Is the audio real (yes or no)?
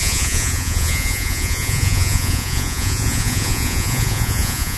no